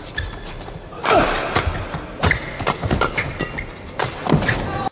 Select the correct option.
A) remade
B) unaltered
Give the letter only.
B